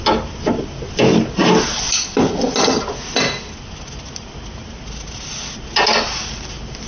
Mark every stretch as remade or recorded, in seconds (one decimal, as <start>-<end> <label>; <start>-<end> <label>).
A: 0.0-6.9 recorded